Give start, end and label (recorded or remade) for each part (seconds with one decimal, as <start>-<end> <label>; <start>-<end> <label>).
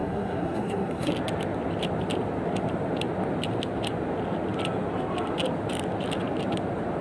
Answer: 0.0-1.1 remade; 1.1-7.0 recorded